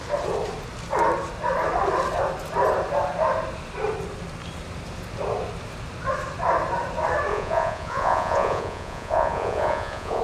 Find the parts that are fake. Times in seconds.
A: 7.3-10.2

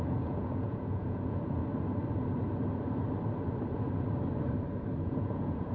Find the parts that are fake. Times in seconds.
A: 0.0-1.6; 5.0-5.7

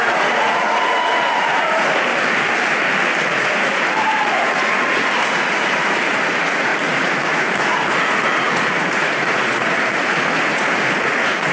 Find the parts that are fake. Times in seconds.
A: 0.0-2.1; 3.2-11.5